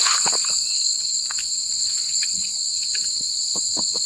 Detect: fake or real fake